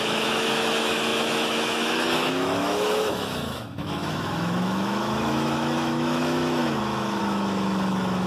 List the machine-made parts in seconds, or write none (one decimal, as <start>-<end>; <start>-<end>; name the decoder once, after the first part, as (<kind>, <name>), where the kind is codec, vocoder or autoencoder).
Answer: 0.0-8.3 (autoencoder, DAC-VAE)